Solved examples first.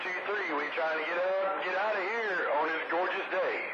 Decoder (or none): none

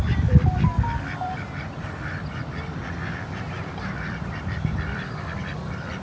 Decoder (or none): vocoder, BigVGAN v2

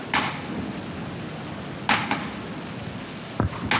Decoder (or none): none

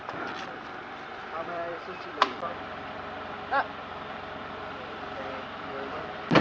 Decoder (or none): vocoder, BigVGAN v2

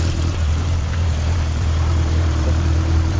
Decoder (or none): vocoder, BigVGAN v2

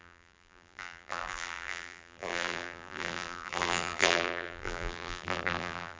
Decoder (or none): vocoder, BigVGAN v2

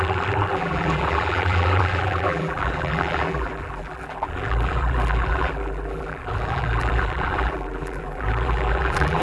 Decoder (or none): vocoder, BigVGAN v2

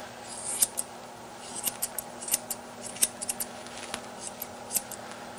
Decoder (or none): none